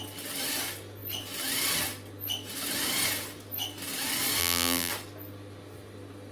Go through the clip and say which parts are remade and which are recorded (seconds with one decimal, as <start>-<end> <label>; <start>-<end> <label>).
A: 0.0-4.4 recorded; 4.4-4.9 remade; 4.9-6.3 recorded